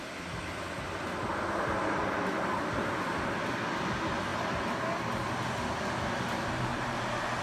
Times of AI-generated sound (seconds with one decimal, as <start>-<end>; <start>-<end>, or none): 6.7-7.4